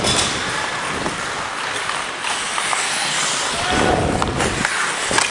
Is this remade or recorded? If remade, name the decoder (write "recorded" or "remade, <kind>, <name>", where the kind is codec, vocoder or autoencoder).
recorded